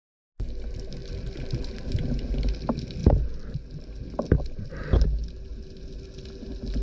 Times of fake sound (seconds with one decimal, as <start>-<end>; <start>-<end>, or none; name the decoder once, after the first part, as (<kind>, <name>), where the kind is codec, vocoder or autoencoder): none